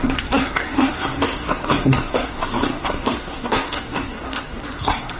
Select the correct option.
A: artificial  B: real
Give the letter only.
A